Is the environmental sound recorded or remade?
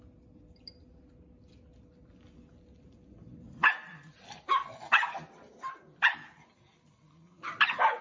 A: recorded